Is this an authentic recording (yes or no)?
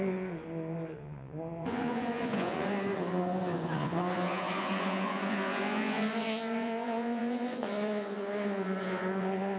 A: no